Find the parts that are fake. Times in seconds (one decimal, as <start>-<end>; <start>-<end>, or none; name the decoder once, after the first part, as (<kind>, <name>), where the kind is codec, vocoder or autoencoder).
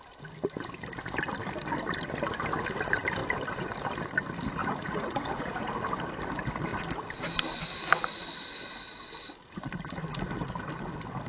4.6-5.7 (vocoder, Vocos)